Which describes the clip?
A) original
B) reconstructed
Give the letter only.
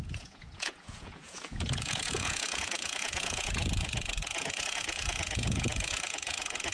B